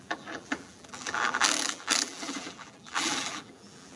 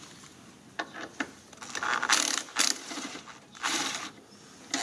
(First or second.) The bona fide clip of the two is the second